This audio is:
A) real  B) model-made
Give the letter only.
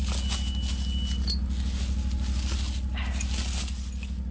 A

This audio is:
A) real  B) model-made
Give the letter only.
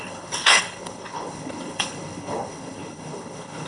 B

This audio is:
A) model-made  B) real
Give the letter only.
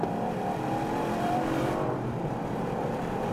A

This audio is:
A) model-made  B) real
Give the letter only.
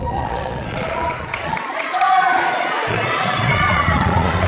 A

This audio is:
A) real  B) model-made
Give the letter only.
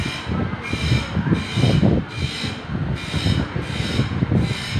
A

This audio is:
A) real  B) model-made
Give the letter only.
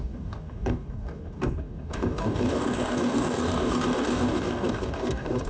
B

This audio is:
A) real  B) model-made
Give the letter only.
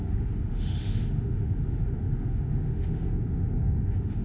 B